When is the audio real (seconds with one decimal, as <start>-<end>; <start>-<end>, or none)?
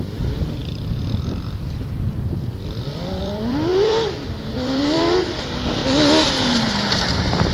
0.6-3.2; 5.8-7.5